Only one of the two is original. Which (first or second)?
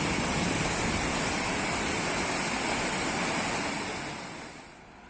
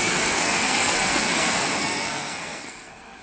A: first